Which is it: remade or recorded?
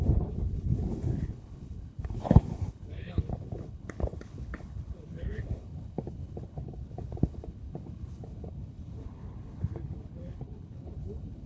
remade